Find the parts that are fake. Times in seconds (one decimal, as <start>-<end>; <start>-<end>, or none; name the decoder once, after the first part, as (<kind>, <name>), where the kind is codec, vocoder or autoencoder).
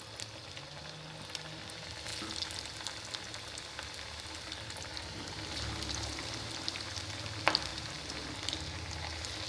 none